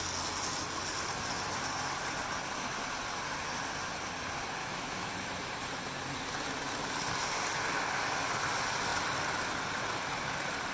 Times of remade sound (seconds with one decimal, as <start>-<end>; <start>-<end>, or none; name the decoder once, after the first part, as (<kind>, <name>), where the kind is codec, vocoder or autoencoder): 4.6-5.1 (autoencoder, DAC-VAE)